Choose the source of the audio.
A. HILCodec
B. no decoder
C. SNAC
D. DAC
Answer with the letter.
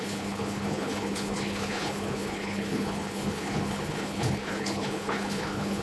A